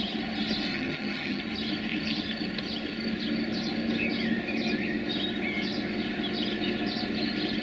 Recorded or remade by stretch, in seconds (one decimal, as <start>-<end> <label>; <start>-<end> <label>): 0.0-0.7 recorded; 0.7-1.4 remade; 1.4-7.6 recorded